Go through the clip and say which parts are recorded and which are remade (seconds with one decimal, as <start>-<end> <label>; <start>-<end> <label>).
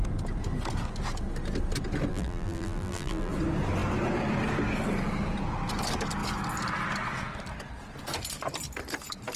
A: 0.0-2.1 recorded; 2.1-3.3 remade; 3.3-9.4 recorded